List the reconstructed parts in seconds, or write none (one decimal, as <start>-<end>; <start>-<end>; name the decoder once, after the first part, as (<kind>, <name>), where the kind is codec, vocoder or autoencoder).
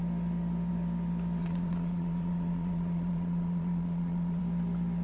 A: 1.4-4.4 (vocoder, Vocos)